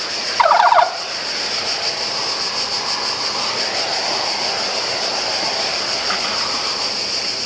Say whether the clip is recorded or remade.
recorded